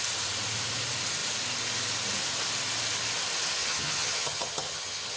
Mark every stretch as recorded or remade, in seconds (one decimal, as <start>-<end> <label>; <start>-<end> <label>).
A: 0.0-3.6 recorded; 3.6-5.2 remade